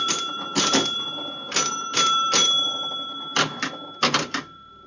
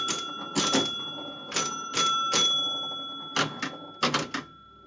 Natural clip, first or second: second